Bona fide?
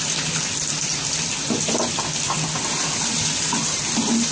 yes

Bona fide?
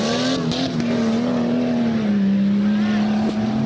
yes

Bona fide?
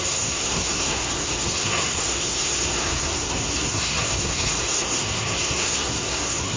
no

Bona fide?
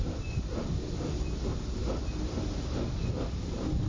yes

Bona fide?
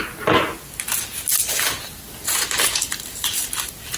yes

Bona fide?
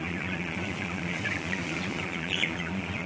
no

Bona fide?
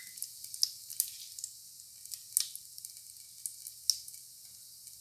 yes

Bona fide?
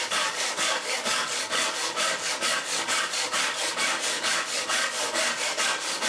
no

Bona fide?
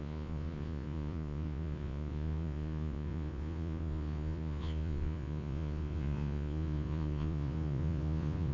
no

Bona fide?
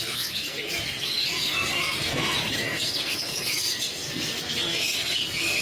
no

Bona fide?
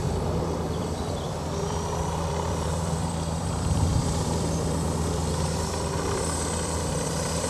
no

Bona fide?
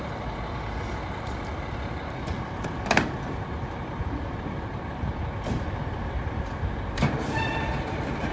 yes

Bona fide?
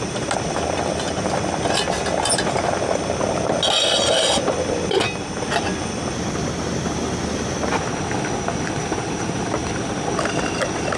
yes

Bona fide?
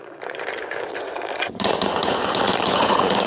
no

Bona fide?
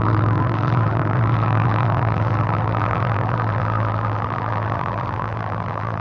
no